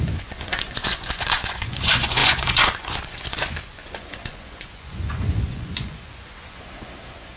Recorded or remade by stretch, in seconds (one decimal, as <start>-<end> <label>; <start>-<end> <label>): 0.0-7.4 remade